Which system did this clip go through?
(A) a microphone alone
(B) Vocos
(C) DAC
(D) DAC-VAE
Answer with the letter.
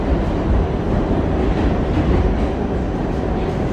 A